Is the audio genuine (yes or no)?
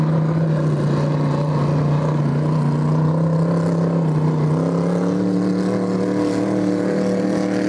yes